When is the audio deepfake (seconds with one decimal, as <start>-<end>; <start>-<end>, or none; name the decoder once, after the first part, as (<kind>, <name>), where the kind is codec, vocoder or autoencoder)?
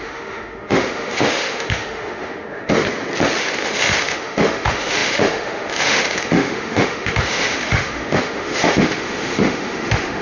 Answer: 0.0-2.8 (autoencoder, DAC-VAE); 3.4-10.2